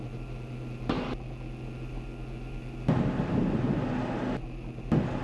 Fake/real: real